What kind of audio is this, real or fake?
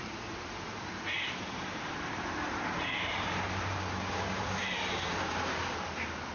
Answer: fake